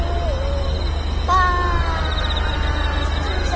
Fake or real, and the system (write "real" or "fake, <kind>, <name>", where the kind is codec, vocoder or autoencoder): real